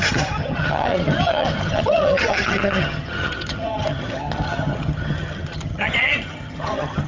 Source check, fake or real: fake